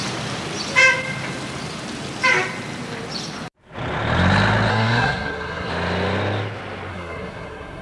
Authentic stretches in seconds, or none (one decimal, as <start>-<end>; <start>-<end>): 0.0-4.7; 5.7-6.9